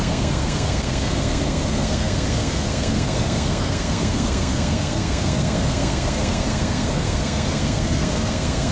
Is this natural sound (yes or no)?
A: no